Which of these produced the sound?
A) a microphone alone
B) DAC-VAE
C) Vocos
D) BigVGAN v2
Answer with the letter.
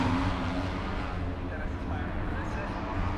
A